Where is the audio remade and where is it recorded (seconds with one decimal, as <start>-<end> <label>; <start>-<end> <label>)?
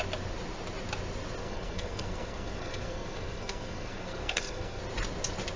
0.0-1.4 recorded; 1.4-4.8 remade; 4.8-5.6 recorded